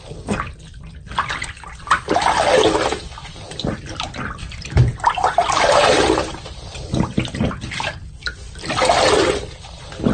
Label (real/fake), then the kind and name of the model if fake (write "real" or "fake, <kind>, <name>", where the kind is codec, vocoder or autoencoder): real